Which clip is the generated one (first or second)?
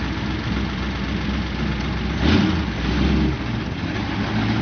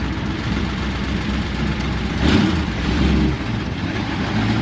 second